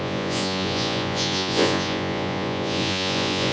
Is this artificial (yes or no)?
yes